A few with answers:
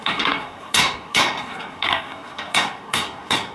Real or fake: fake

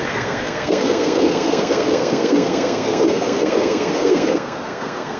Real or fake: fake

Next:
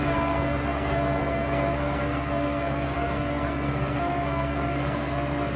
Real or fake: fake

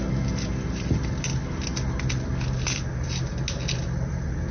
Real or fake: real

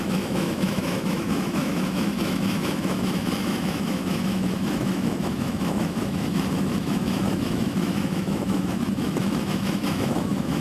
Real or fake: fake